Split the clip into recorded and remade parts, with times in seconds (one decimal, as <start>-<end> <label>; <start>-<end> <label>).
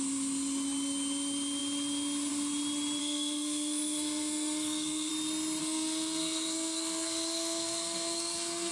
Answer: 0.0-3.0 recorded; 3.0-5.1 remade; 5.1-5.6 recorded; 5.6-8.7 remade